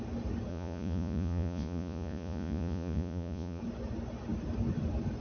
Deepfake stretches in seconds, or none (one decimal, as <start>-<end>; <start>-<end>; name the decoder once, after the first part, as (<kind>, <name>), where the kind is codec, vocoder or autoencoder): 0.5-3.6 (vocoder, Vocos)